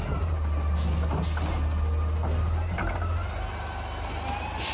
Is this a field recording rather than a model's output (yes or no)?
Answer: yes